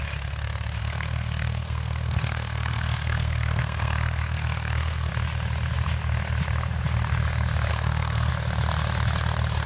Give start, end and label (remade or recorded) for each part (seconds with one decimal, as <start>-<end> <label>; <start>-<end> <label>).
0.0-0.8 recorded; 0.8-5.1 remade; 5.1-7.7 recorded; 7.7-8.3 remade; 8.3-9.7 recorded